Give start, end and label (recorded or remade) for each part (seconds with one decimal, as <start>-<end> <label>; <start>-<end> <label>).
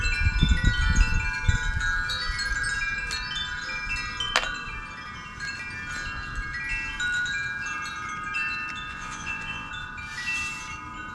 0.0-8.9 recorded; 8.9-9.7 remade; 9.7-11.1 recorded